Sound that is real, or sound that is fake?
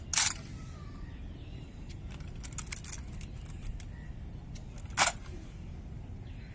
real